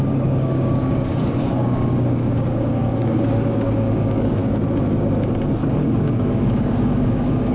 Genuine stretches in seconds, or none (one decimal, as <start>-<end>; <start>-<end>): 4.4-5.7